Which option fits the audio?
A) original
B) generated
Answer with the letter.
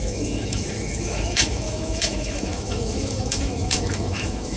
B